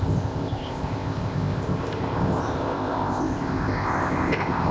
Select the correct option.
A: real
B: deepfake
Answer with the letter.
B